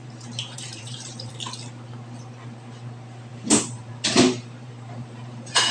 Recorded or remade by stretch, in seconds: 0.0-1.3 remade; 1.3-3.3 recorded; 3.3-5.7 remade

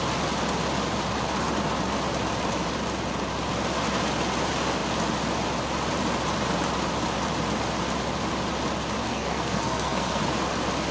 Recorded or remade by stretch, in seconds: 0.0-9.1 recorded; 9.1-10.2 remade; 10.2-10.9 recorded